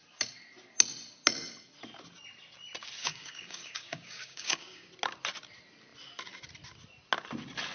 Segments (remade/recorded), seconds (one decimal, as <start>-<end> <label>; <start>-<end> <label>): 0.0-3.0 recorded; 3.0-4.9 remade; 4.9-7.7 recorded